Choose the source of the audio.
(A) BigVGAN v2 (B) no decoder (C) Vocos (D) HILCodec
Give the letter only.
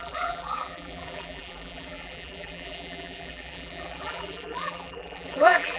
A